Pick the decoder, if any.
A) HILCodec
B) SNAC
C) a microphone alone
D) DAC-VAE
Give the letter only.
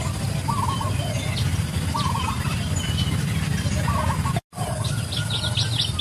C